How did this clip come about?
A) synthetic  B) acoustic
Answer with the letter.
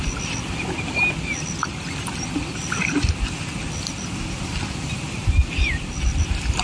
B